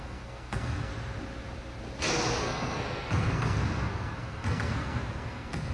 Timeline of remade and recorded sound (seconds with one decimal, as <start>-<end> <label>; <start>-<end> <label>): 0.0-0.9 remade; 0.9-2.4 recorded; 2.4-5.7 remade